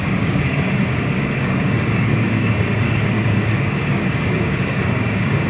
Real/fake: fake